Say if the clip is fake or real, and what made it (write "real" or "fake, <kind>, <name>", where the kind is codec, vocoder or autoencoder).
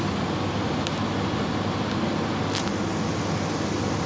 real